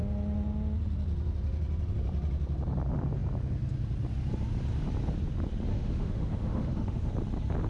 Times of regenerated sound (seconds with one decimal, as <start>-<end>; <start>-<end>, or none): 5.7-7.1